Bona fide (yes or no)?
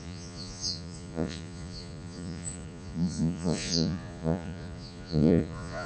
no